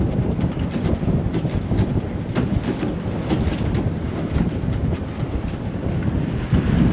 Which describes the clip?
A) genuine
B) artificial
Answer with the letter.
A